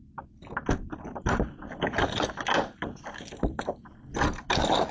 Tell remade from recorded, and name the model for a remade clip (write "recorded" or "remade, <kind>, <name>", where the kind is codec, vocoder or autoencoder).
recorded